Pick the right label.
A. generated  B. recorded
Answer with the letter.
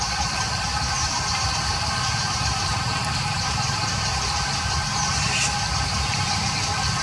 A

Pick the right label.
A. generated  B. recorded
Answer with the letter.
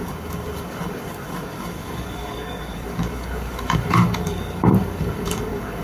A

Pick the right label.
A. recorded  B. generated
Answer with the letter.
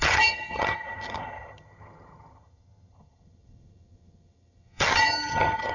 B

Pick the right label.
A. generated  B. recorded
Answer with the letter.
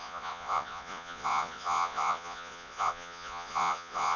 A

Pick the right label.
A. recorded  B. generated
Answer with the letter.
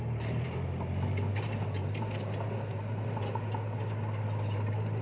A